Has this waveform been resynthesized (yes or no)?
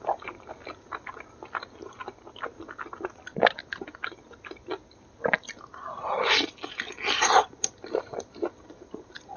no